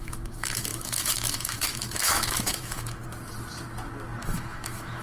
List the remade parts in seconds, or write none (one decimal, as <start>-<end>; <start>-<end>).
0.0-3.0; 4.2-5.0